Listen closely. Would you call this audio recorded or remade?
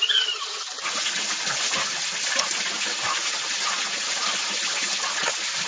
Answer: recorded